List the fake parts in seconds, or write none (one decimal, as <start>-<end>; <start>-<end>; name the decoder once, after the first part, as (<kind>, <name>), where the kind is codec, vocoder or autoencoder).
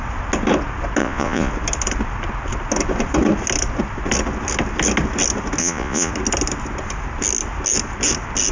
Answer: 1.0-1.5 (vocoder, Vocos); 5.6-6.1